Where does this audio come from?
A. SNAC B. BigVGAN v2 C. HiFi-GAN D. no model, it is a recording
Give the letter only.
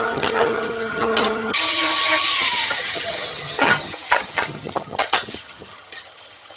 C